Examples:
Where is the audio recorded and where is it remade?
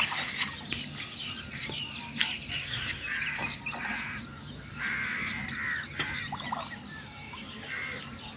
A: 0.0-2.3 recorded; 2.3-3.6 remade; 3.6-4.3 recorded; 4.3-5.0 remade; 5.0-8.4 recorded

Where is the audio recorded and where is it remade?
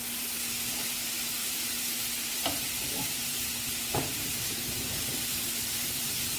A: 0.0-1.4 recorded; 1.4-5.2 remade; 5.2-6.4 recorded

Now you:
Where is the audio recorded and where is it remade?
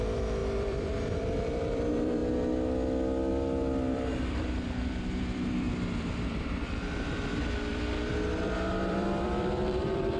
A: 0.0-2.2 remade; 2.2-3.3 recorded; 3.3-10.2 remade